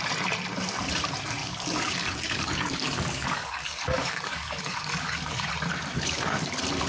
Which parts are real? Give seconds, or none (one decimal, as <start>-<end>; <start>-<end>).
0.0-1.4; 5.5-5.9; 6.5-6.9